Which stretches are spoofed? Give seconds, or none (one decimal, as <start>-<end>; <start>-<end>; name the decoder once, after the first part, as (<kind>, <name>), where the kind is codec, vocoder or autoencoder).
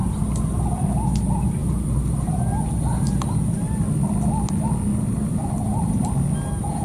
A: 4.9-5.5 (vocoder, BigVGAN v2)